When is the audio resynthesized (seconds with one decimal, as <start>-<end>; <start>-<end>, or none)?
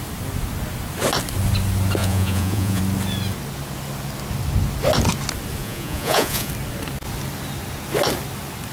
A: 2.0-2.8; 5.6-6.5